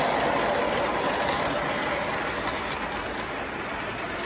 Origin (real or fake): real